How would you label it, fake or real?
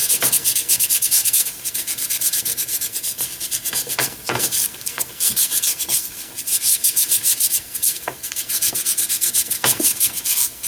fake